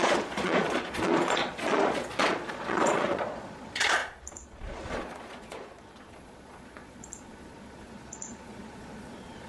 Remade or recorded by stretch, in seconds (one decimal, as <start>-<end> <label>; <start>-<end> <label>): 0.0-9.5 remade